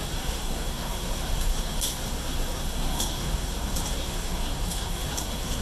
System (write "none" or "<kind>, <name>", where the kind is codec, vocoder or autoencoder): codec, SNAC